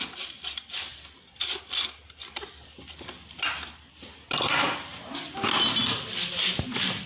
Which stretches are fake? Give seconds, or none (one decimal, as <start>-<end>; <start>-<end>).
0.9-3.9